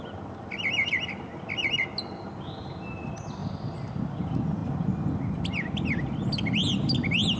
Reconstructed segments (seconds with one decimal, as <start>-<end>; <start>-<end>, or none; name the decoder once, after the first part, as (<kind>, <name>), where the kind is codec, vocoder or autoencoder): none